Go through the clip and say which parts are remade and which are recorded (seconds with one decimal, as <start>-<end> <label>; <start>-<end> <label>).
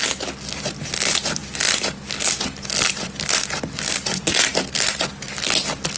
0.0-6.0 recorded